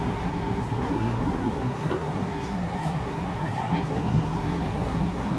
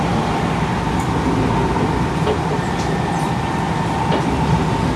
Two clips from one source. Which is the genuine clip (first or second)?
second